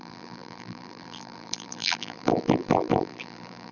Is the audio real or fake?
fake